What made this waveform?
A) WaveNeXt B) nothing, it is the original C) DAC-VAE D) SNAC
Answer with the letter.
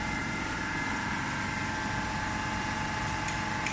B